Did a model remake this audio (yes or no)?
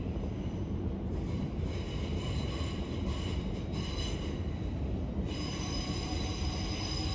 no